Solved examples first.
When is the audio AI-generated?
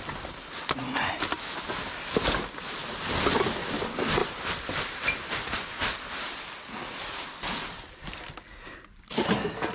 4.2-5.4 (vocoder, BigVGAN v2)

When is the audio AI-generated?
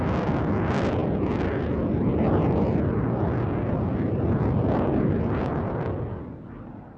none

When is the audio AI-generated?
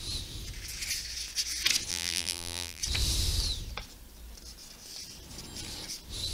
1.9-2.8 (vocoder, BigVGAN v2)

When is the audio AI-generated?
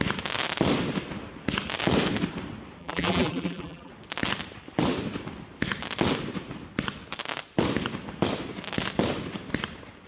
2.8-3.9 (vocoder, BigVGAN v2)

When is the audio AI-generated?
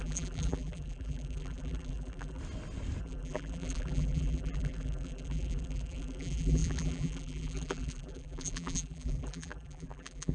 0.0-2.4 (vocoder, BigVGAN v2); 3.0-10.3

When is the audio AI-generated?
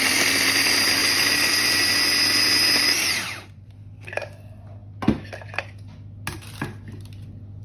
1.0-1.6 (vocoder, BigVGAN v2); 2.8-3.7